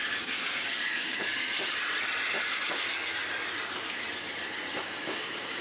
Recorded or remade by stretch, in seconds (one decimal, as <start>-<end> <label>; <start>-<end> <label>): 0.0-1.4 remade; 1.4-4.8 recorded; 4.8-5.6 remade